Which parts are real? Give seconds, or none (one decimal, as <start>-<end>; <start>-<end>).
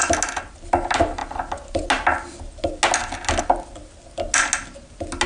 0.0-5.3